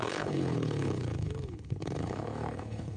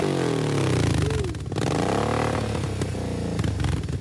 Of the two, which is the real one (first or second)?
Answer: second